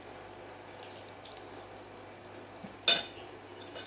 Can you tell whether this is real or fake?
real